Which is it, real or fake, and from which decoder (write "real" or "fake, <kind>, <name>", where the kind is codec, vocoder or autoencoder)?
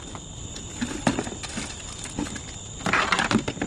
real